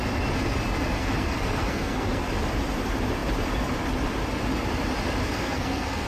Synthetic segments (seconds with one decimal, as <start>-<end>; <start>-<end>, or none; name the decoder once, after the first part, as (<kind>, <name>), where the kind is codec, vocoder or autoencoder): 1.0-2.3 (codec, SNAC); 5.2-6.1